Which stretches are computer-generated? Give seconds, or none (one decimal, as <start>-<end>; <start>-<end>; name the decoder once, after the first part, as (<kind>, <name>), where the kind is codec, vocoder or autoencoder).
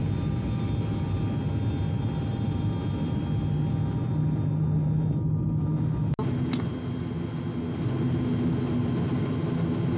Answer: none